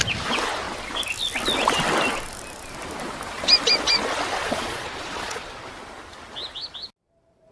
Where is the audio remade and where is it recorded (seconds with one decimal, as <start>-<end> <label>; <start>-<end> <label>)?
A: 0.0-4.4 recorded; 4.4-5.7 remade; 5.7-7.5 recorded